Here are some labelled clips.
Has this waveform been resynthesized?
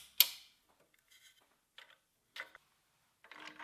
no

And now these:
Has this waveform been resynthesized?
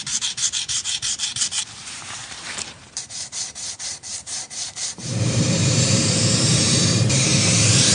yes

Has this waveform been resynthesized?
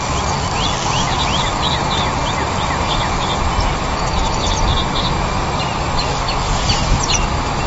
no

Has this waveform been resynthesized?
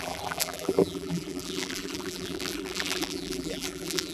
yes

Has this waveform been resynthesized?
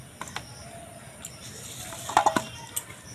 no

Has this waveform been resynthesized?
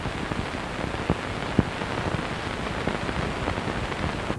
no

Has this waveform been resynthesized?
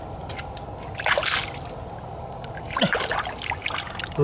no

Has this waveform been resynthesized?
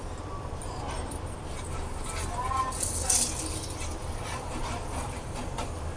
no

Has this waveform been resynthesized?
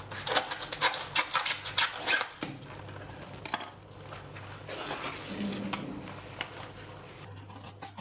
no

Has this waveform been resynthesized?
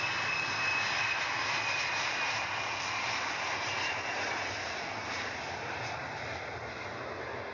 no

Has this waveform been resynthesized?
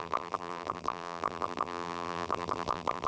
yes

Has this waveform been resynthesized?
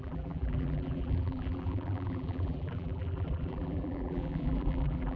yes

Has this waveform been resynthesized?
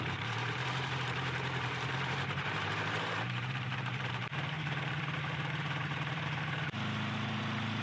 yes